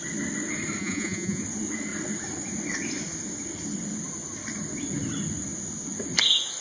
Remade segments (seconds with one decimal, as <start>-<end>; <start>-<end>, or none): 0.8-1.4